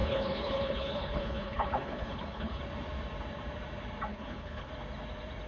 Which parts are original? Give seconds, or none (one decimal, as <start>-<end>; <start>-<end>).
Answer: 2.6-4.1; 4.7-5.5